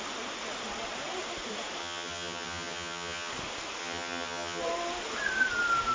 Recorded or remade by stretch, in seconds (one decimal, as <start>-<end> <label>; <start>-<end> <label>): 0.0-1.8 recorded; 1.8-3.3 remade; 3.3-3.8 recorded; 3.8-4.6 remade; 4.6-5.9 recorded